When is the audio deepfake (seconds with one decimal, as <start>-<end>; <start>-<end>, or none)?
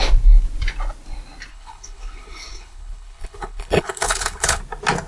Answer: 1.5-4.6